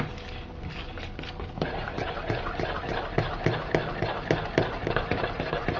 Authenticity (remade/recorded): recorded